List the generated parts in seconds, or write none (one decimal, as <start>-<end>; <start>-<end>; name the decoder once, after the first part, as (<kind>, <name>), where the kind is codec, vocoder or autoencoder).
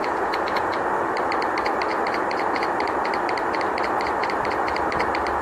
0.0-0.9 (vocoder, Vocos)